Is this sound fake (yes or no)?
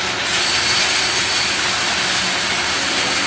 no